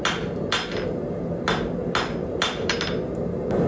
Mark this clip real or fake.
real